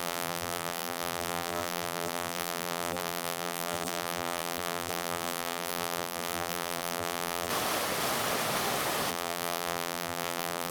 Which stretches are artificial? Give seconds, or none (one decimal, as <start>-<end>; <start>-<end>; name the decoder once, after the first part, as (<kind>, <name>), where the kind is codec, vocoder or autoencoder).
0.0-7.5 (vocoder, BigVGAN v2); 9.1-10.7